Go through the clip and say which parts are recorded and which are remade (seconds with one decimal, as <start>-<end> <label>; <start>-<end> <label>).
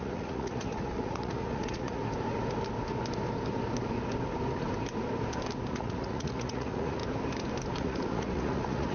0.0-2.0 remade; 2.0-5.7 recorded; 5.7-7.0 remade; 7.0-7.8 recorded; 7.8-8.9 remade